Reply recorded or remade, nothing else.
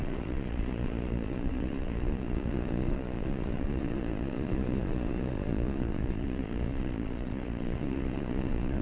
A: remade